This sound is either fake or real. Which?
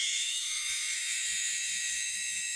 fake